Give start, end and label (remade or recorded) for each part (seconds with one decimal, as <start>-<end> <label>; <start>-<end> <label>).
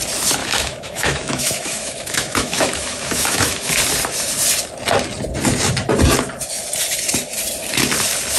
0.0-0.4 recorded; 0.4-3.7 remade; 3.7-8.4 recorded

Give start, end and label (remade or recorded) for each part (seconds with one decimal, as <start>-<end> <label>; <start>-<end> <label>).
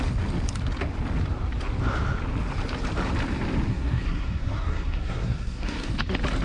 0.0-3.7 recorded; 3.7-5.9 remade; 5.9-6.4 recorded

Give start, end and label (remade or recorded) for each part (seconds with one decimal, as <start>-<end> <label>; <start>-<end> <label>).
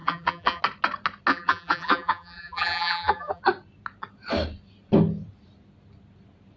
0.0-0.6 remade; 0.6-1.3 recorded; 1.3-3.4 remade; 3.4-6.6 recorded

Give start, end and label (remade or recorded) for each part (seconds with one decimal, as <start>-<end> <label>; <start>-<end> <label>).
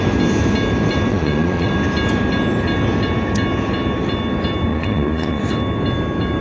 0.0-1.1 recorded; 1.1-1.7 remade; 1.7-4.7 recorded; 4.7-5.4 remade; 5.4-6.4 recorded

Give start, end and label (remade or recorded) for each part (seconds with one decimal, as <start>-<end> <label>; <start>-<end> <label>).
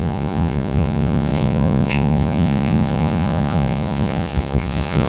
0.0-5.1 remade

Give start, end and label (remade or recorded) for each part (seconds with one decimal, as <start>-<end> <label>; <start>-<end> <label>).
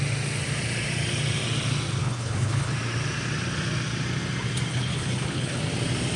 0.0-2.0 recorded; 2.0-2.7 remade; 2.7-4.7 recorded; 4.7-5.6 remade; 5.6-6.2 recorded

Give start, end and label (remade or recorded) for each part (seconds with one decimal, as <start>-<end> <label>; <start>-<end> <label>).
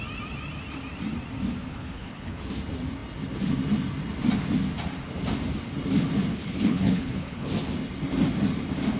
0.0-1.7 recorded; 1.7-2.4 remade; 2.4-6.3 recorded; 6.3-7.5 remade; 7.5-9.0 recorded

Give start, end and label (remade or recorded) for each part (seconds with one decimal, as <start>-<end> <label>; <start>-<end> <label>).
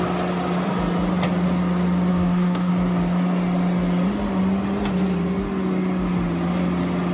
0.0-2.1 recorded; 2.1-2.7 remade; 2.7-7.1 recorded